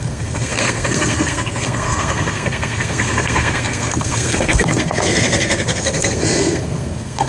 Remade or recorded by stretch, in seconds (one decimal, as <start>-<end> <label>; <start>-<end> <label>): 0.0-7.3 remade